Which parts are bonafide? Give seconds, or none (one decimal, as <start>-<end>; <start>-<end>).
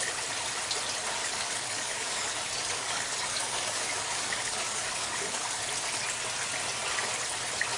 0.0-1.2; 5.6-7.8